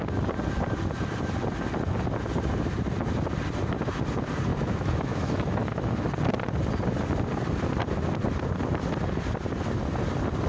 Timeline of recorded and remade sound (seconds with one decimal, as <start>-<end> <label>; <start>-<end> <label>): 0.0-4.5 recorded; 4.5-6.1 remade; 6.1-10.5 recorded